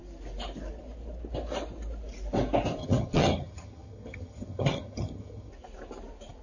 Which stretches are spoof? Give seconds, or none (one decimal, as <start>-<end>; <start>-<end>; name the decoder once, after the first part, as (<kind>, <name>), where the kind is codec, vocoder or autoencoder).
2.8-5.5 (vocoder, HiFi-GAN)